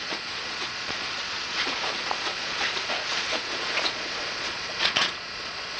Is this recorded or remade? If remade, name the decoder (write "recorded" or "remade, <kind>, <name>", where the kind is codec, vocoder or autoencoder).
remade, vocoder, Vocos